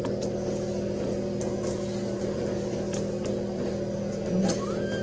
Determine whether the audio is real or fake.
real